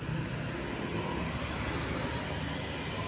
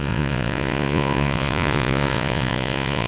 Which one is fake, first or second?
second